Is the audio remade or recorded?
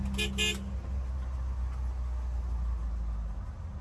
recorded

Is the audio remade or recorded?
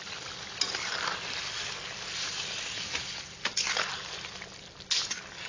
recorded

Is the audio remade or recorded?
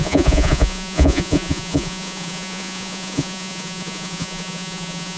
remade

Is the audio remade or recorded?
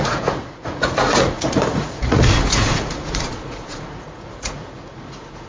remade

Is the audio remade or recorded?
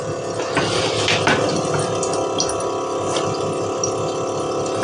recorded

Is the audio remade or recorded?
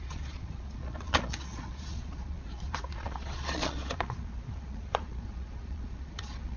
remade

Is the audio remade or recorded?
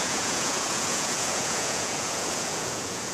remade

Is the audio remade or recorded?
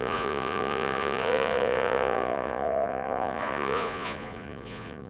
remade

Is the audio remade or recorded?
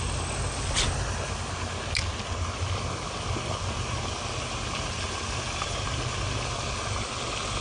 recorded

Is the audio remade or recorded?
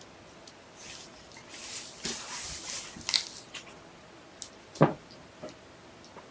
recorded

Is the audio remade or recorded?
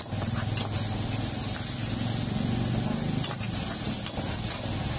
recorded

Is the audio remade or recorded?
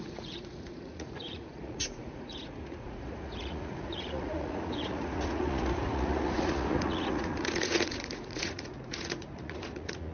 remade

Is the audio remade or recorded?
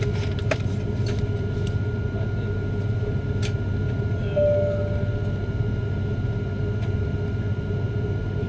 recorded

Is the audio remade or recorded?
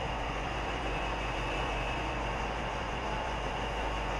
remade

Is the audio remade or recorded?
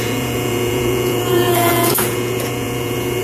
remade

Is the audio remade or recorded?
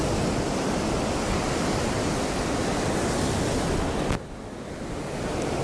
recorded